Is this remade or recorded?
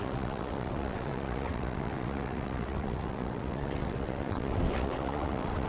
remade